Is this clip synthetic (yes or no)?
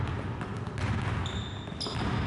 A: no